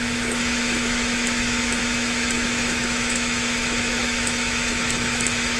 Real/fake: fake